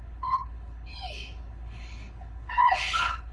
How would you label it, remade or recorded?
remade